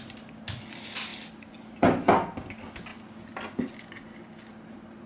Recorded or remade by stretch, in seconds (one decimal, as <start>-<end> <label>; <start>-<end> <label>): 0.0-5.1 recorded